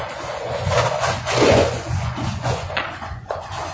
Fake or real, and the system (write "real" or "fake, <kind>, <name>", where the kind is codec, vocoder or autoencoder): fake, vocoder, Vocos